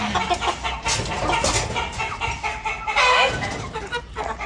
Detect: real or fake real